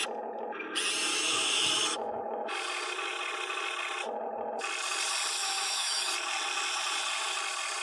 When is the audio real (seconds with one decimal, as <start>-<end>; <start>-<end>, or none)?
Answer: 0.0-1.1; 2.5-5.4; 6.1-7.8